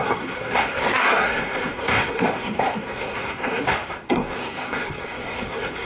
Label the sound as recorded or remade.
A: remade